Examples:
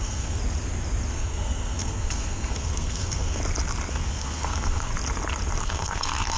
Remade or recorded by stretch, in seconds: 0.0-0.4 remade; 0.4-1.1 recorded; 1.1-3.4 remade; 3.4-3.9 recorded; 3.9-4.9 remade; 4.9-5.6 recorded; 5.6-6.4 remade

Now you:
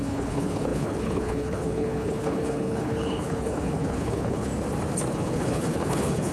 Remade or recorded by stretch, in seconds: 0.0-4.5 remade; 4.5-5.1 recorded; 5.1-6.3 remade

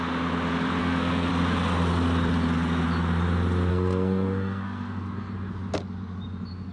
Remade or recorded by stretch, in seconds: 0.0-0.8 recorded; 0.8-1.3 remade; 1.3-3.7 recorded; 3.7-5.3 remade; 5.3-6.7 recorded

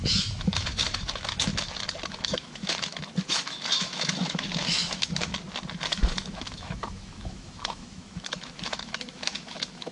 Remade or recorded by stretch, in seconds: 0.0-1.5 remade; 1.5-2.1 recorded; 2.1-5.3 remade; 5.3-5.9 recorded; 5.9-9.9 remade